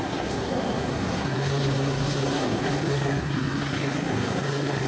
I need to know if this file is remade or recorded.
remade